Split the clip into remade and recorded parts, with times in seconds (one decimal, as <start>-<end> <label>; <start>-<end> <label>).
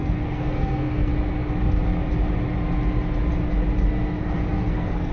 0.0-1.1 remade; 1.1-4.2 recorded; 4.2-5.1 remade